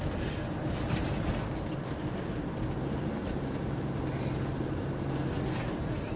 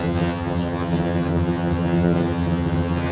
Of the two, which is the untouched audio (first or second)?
first